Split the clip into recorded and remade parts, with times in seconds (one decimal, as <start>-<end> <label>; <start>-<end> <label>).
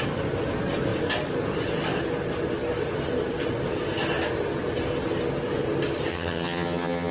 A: 0.0-6.1 recorded; 6.1-7.1 remade